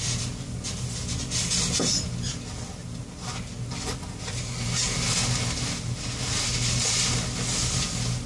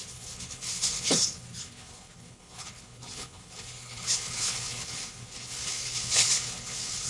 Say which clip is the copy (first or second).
second